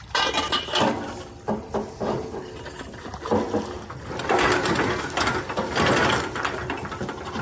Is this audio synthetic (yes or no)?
no